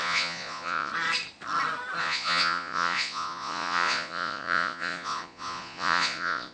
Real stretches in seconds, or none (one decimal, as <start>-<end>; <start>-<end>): 0.9-2.0